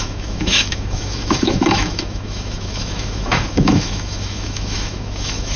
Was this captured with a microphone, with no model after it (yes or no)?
no